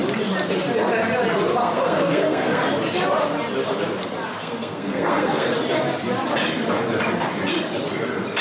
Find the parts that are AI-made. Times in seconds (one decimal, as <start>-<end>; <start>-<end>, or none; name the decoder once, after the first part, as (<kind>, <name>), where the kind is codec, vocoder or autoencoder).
1.6-2.6 (codec, SNAC); 4.4-5.5